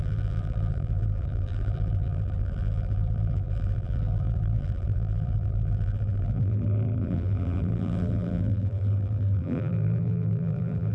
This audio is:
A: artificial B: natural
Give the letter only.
A